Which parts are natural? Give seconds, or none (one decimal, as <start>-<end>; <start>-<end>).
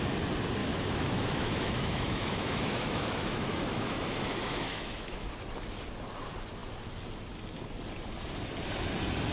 0.0-0.6; 5.3-9.3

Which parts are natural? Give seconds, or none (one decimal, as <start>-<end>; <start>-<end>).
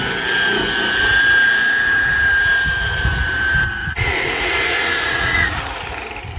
0.0-3.8; 5.6-6.4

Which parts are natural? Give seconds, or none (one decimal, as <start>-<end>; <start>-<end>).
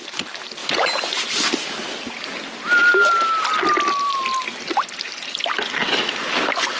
0.0-6.8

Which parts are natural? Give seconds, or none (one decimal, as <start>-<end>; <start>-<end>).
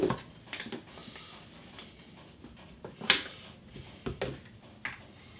0.0-1.0; 4.2-5.4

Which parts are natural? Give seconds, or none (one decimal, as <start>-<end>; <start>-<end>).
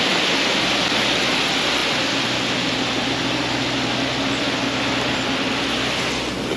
0.0-6.6